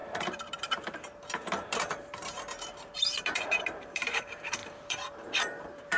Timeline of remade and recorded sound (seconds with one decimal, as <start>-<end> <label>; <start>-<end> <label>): 0.0-6.0 remade